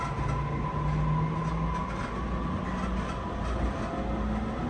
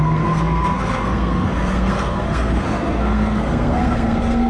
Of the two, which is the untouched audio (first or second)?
first